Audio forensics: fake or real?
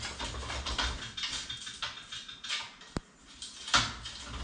real